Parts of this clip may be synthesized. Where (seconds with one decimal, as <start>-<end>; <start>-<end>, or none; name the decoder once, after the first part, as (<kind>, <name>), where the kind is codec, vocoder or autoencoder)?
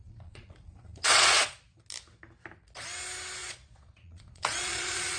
0.0-1.6 (vocoder, Vocos); 3.4-5.2